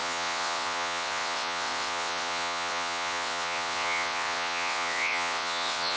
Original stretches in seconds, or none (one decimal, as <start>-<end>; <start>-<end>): none